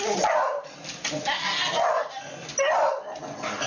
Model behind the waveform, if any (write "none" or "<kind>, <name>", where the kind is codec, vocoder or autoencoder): none